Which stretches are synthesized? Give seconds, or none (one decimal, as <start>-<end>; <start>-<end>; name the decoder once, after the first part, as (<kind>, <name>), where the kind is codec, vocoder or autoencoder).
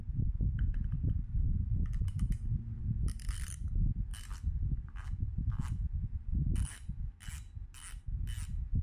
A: 0.8-2.8 (vocoder, BigVGAN v2); 6.1-7.0